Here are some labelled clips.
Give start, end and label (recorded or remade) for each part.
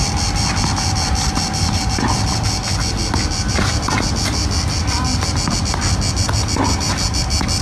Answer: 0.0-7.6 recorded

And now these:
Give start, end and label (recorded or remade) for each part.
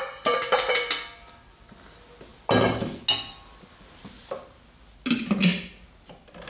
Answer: 0.0-6.5 recorded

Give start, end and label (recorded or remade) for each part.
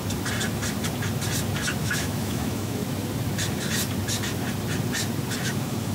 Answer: 0.0-1.8 recorded; 1.8-2.8 remade; 2.8-5.4 recorded; 5.4-5.9 remade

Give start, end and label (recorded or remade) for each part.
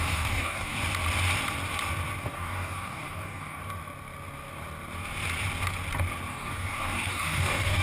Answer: 0.0-0.8 remade; 0.8-2.2 recorded; 2.2-3.6 remade; 3.6-6.3 recorded; 6.3-7.8 remade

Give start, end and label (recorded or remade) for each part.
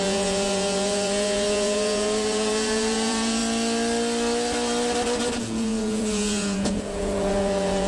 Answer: 0.0-3.4 remade; 3.4-5.4 recorded; 5.4-7.9 remade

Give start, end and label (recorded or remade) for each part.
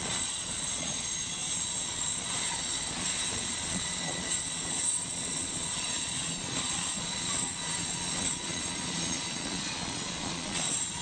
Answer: 0.0-11.0 remade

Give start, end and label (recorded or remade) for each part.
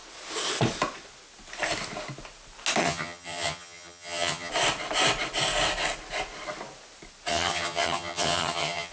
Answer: 0.0-2.8 recorded; 2.8-4.5 remade; 4.5-7.3 recorded; 7.3-8.9 remade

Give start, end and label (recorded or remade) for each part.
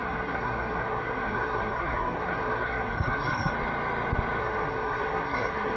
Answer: 0.0-3.5 remade; 3.5-4.4 recorded; 4.4-5.8 remade